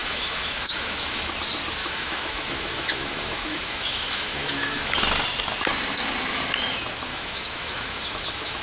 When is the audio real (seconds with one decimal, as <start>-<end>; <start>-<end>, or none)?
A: 1.3-1.8; 5.0-7.1